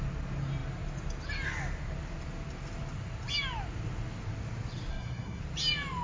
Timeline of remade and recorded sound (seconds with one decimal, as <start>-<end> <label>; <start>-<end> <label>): 0.0-4.9 recorded; 4.9-5.4 remade; 5.4-6.0 recorded